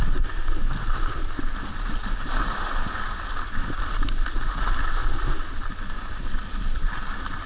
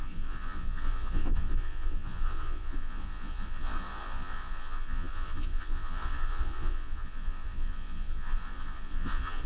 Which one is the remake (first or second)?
second